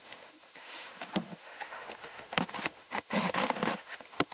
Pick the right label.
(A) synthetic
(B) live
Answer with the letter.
A